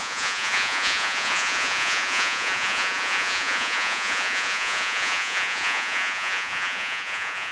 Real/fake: fake